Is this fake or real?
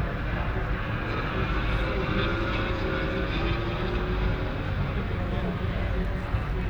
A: real